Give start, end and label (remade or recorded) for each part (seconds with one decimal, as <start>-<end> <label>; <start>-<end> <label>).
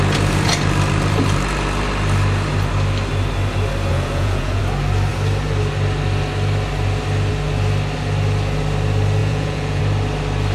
0.0-3.9 recorded; 3.9-4.6 remade; 4.6-9.2 recorded; 9.2-9.8 remade; 9.8-10.5 recorded